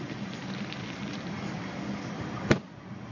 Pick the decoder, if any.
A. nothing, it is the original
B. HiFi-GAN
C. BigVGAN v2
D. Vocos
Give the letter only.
A